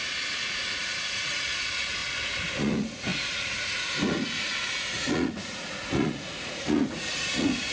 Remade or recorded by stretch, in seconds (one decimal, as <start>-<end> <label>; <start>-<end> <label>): 0.0-2.0 remade; 2.0-2.6 recorded; 2.6-7.7 remade